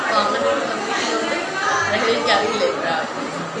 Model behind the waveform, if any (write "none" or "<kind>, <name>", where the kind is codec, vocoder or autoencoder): none